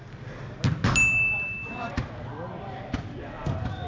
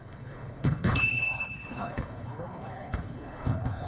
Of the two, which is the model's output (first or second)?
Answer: second